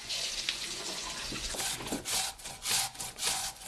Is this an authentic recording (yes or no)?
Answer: no